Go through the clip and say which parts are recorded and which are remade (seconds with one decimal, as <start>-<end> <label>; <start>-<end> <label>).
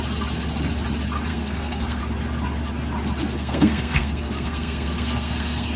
0.0-1.3 recorded; 1.3-2.0 remade; 2.0-3.2 recorded; 3.2-5.8 remade